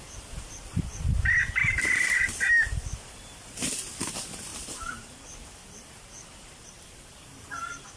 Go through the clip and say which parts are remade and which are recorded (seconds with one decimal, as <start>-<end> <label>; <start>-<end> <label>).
0.0-8.0 remade